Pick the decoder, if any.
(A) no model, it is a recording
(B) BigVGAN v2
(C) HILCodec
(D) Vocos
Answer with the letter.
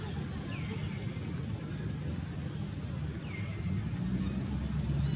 A